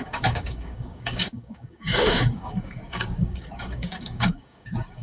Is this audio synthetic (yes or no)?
yes